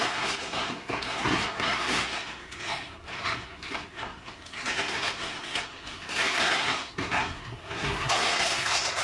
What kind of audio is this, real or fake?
fake